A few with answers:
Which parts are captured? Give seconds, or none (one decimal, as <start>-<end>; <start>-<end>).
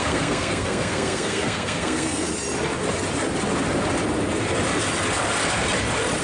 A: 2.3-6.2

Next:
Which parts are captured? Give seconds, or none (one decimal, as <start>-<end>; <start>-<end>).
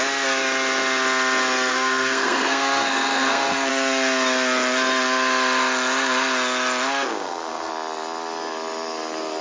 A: 0.0-1.7; 3.7-7.1; 7.7-9.4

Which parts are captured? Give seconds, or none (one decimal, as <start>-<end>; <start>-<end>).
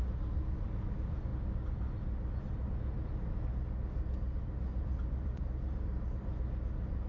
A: 0.0-7.1